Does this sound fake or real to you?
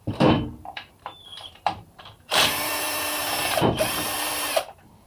fake